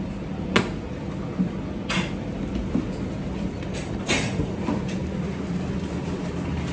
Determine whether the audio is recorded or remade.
recorded